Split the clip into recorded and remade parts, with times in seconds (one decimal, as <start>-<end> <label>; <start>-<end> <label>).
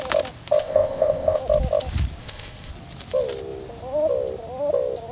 0.0-0.6 recorded; 0.6-1.4 remade; 1.4-2.2 recorded; 2.2-2.7 remade; 2.7-5.1 recorded